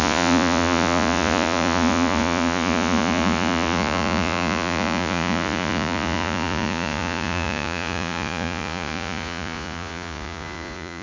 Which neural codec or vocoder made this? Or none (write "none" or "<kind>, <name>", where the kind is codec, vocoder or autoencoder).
vocoder, Vocos